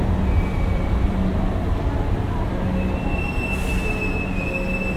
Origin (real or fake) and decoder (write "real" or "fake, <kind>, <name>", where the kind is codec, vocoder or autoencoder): real